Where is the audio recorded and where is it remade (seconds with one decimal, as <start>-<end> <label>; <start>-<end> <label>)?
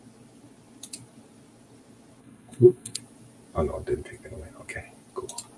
0.0-2.2 recorded; 2.2-3.0 remade; 3.0-5.6 recorded